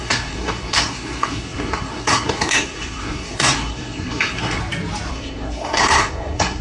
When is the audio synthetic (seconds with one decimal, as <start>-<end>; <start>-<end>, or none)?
0.0-4.6; 5.1-6.6